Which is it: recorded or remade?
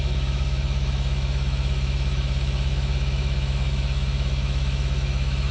remade